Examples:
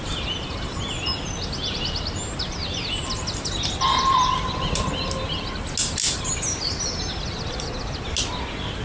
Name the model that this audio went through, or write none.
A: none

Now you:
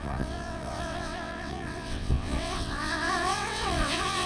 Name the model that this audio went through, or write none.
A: vocoder, WaveNeXt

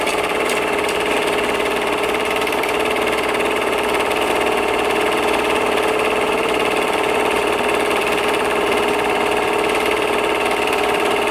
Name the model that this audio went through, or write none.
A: vocoder, BigVGAN v2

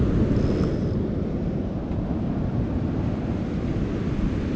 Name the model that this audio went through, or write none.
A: none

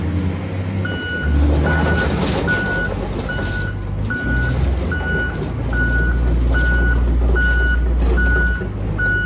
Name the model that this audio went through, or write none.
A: none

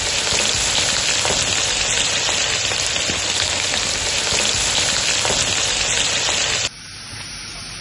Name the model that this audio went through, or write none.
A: none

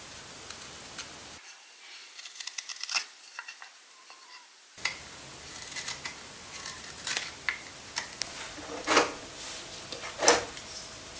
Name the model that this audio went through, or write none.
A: none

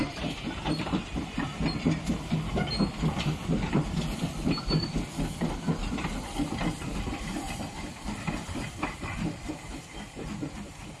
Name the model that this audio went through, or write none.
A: none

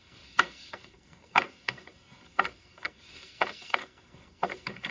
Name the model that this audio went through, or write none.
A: codec, SNAC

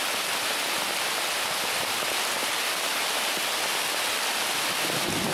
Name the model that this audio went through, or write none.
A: none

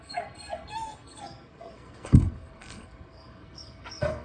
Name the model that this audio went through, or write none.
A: codec, SNAC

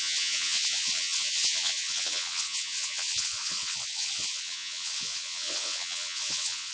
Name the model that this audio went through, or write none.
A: vocoder, WaveNeXt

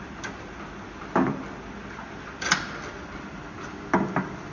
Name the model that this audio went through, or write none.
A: none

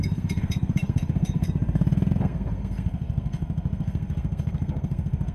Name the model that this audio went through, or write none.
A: codec, SNAC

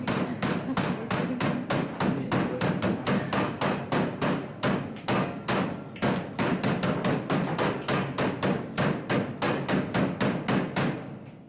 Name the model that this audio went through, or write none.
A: none